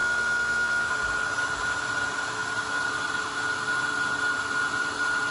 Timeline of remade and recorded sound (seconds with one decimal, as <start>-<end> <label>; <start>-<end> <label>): 0.0-0.9 remade; 0.9-5.3 recorded